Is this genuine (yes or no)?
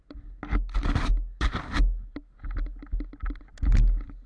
yes